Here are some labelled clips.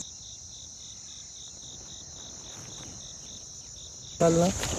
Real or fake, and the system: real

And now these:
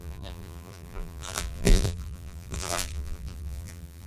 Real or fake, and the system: fake, vocoder, BigVGAN v2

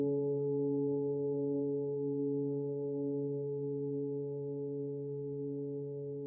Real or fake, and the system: fake, codec, SNAC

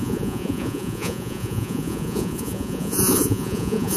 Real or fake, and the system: fake, vocoder, Vocos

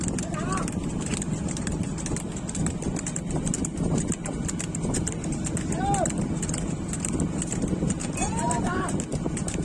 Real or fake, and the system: real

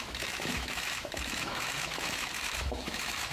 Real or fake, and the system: fake, autoencoder, DAC-VAE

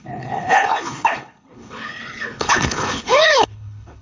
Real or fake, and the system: fake, codec, HILCodec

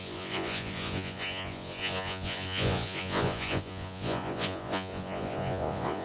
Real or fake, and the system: fake, vocoder, Vocos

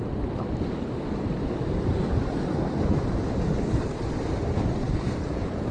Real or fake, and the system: fake, vocoder, BigVGAN v2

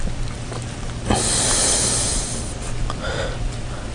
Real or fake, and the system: real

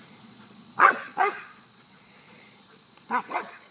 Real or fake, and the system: fake, vocoder, Vocos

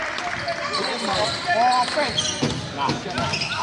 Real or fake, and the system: real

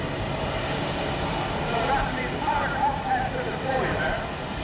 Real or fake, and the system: real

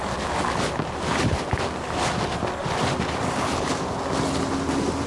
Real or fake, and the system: real